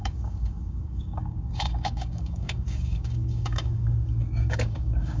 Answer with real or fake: fake